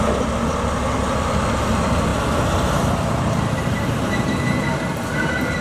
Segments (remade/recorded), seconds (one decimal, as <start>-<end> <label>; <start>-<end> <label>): 0.0-2.1 recorded; 2.1-4.5 remade; 4.5-5.6 recorded